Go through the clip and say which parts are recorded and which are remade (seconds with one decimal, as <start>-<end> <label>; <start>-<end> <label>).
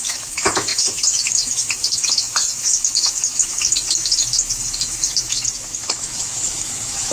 0.0-7.1 remade